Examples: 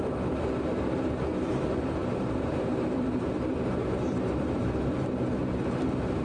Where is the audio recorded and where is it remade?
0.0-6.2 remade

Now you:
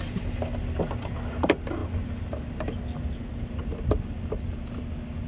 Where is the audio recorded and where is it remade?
0.0-5.3 recorded

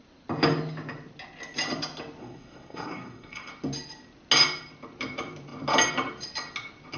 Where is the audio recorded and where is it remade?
0.0-2.2 recorded; 2.2-3.5 remade; 3.5-7.0 recorded

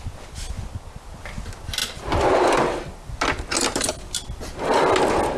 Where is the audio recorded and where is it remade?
0.0-5.4 recorded